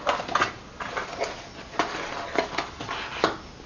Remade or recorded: recorded